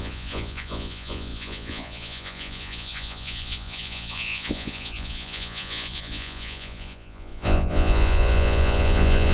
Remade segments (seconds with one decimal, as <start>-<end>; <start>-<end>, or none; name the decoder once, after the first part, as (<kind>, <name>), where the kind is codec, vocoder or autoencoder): 0.0-9.3 (vocoder, Vocos)